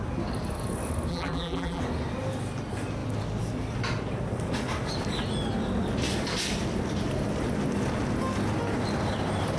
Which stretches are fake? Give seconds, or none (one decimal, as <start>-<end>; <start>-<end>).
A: 1.1-1.8